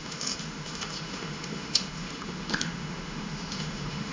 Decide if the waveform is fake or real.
fake